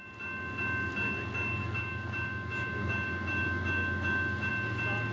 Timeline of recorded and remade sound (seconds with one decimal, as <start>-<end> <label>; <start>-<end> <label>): 0.0-1.6 recorded; 1.6-4.5 remade; 4.5-5.1 recorded